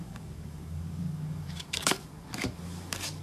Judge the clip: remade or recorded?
remade